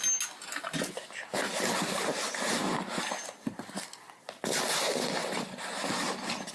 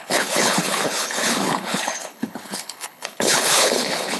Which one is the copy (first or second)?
second